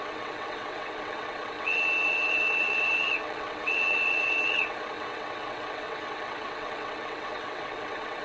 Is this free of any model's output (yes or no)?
no